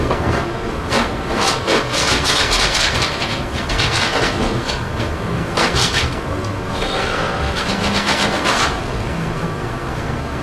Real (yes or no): no